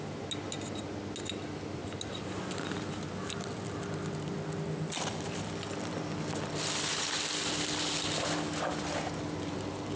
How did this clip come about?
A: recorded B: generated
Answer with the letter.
A